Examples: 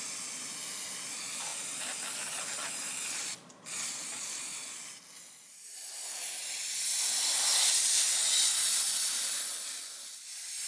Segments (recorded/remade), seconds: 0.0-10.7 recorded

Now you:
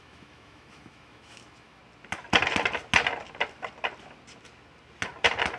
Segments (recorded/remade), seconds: 0.0-1.8 remade; 1.8-5.6 recorded

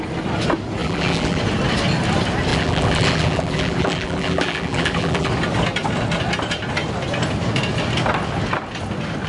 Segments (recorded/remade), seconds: 0.0-0.8 recorded; 0.8-1.4 remade; 1.4-2.5 recorded; 2.5-5.3 remade; 5.3-9.3 recorded